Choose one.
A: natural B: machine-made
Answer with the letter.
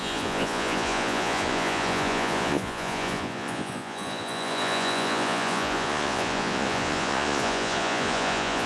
B